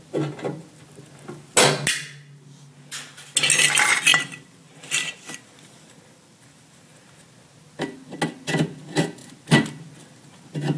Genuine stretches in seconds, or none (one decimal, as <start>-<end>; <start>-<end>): 0.0-4.1; 6.9-10.8